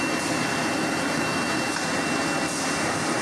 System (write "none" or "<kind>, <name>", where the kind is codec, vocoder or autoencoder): none